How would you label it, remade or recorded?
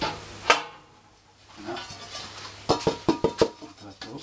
recorded